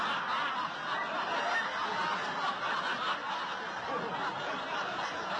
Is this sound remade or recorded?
recorded